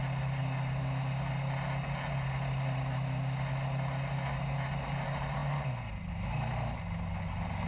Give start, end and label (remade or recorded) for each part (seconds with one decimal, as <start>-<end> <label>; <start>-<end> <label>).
0.0-7.7 recorded